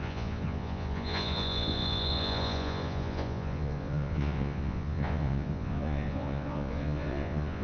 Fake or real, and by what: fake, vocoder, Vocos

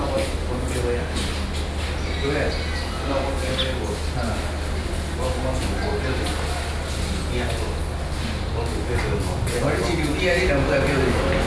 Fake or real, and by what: real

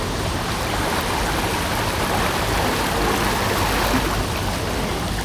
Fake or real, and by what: real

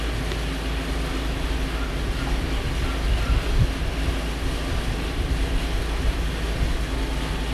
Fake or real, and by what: real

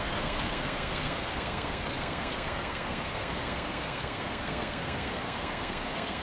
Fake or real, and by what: fake, codec, SNAC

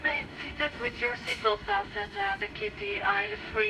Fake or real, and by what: fake, autoencoder, DAC-VAE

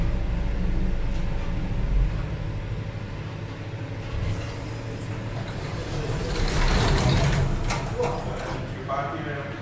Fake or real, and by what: real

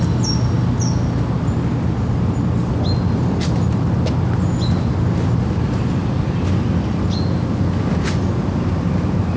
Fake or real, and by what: real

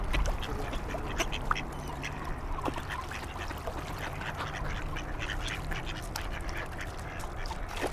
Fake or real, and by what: real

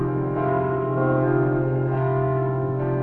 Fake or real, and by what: fake, codec, SNAC